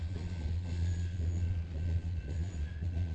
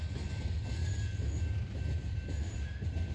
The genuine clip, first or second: second